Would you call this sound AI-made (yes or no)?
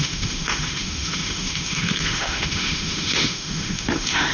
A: yes